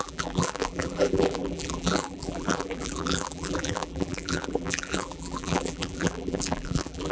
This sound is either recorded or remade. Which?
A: remade